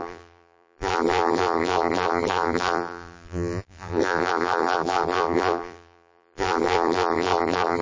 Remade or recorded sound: remade